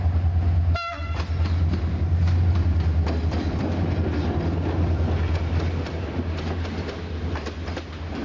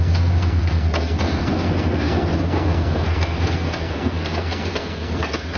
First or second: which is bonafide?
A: first